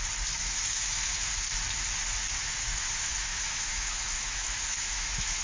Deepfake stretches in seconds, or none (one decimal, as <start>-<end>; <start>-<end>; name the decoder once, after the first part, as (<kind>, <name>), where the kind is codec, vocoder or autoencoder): 0.4-1.3 (autoencoder, DAC-VAE); 2.4-5.4